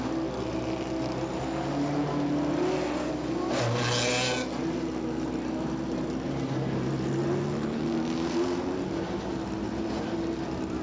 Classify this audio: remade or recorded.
recorded